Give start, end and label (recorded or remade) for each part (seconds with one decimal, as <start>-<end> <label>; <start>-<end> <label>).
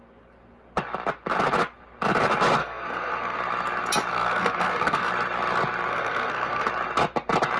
0.0-2.6 recorded; 2.6-3.4 remade; 3.4-4.1 recorded; 4.1-5.1 remade; 5.1-5.9 recorded; 5.9-6.7 remade; 6.7-7.6 recorded